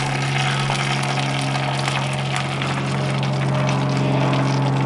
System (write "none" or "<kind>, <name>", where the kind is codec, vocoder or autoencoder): none